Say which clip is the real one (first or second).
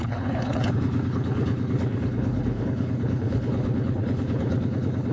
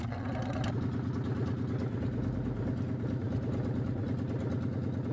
second